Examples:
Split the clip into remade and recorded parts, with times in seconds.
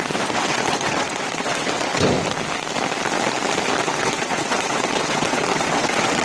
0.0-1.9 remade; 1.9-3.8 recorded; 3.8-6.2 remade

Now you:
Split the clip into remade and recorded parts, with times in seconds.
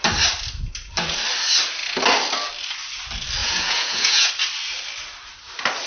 0.0-3.4 recorded; 3.4-4.3 remade; 4.3-5.9 recorded